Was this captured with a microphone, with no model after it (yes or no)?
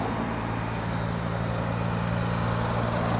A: yes